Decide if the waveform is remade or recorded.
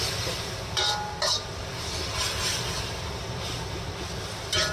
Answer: recorded